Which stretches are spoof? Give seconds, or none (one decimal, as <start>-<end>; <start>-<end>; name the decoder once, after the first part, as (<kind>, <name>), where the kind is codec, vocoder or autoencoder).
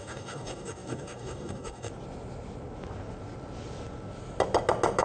0.0-1.9 (codec, DAC)